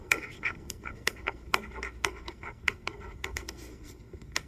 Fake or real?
fake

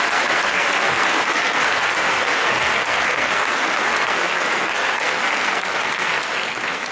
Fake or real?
fake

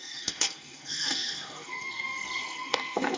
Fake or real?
fake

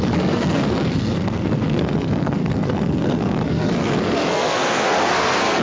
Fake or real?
fake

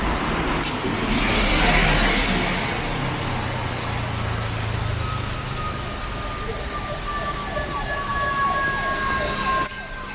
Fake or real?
real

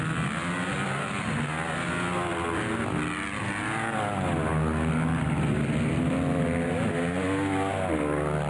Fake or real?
real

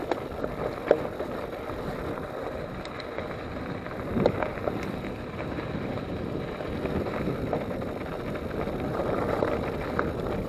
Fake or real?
real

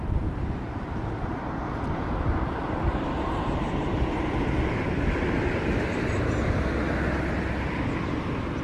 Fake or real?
real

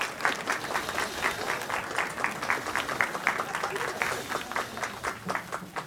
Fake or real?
real